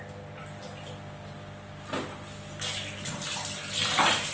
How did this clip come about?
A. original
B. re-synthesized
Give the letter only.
A